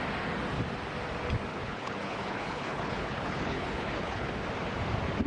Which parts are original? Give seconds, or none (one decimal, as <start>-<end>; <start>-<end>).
0.0-1.5; 4.3-5.3